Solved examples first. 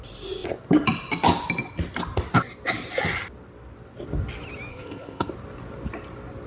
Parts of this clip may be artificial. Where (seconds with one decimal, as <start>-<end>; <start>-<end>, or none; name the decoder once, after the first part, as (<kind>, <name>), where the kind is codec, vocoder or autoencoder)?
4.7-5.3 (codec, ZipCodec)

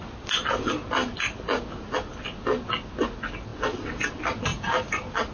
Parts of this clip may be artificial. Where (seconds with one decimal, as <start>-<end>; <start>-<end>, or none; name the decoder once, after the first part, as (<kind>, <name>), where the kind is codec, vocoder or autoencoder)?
none

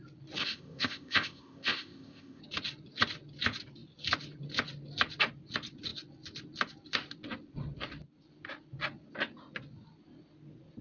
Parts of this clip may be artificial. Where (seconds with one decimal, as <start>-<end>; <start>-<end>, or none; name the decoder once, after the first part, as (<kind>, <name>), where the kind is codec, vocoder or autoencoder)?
0.4-2.4 (codec, ZipCodec)